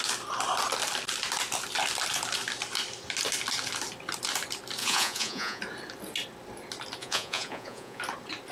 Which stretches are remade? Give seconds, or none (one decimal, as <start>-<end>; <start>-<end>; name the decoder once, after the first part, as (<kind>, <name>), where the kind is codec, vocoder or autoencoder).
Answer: 4.8-5.6 (vocoder, Vocos); 7.0-8.0